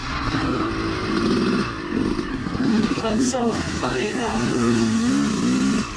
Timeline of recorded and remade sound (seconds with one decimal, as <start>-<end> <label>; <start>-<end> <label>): 0.0-0.7 remade; 0.7-2.3 recorded; 2.3-5.1 remade; 5.1-6.0 recorded